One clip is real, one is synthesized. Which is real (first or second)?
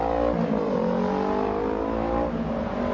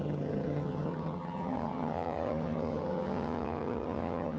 first